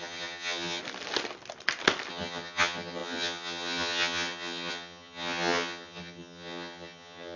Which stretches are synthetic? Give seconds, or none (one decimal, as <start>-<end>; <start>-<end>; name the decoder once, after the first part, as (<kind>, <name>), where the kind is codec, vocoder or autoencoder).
0.0-0.8 (vocoder, HiFi-GAN); 2.1-7.4